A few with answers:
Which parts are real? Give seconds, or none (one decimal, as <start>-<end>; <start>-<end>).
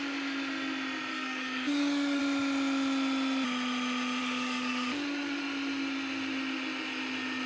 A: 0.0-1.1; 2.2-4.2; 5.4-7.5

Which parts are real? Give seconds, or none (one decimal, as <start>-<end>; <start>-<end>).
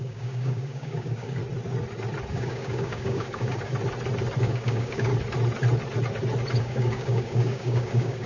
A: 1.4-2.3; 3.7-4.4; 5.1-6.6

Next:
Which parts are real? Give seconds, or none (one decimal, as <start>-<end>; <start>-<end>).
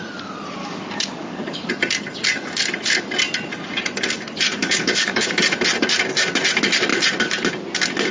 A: 0.0-0.6; 1.7-4.6; 5.4-8.1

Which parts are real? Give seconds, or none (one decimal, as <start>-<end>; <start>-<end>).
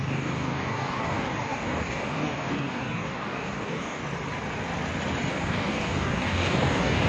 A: 4.0-5.3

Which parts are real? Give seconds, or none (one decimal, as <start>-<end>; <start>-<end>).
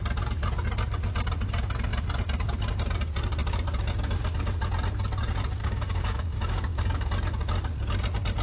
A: 0.0-5.6; 7.1-8.4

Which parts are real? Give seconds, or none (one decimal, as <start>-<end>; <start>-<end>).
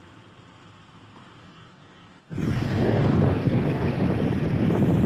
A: 0.0-1.4; 3.9-5.1